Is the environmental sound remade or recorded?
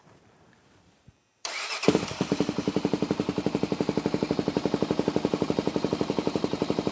remade